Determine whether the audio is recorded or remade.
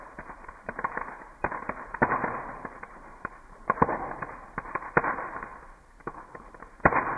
remade